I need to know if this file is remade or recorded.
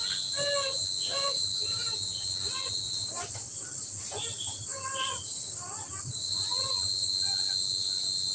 recorded